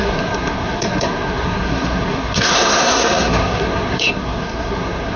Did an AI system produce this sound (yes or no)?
yes